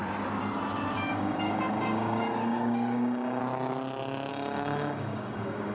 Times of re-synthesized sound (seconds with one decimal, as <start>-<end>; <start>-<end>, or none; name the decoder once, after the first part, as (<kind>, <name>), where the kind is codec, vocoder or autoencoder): 1.1-3.4 (codec, DAC); 4.3-5.7